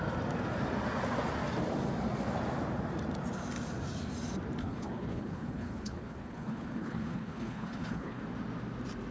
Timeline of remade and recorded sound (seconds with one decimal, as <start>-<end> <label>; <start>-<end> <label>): 0.0-4.6 recorded; 4.6-8.2 remade; 8.2-9.1 recorded